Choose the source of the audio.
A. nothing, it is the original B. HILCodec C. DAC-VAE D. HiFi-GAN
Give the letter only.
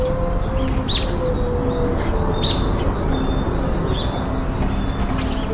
A